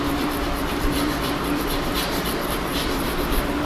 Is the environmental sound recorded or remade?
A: remade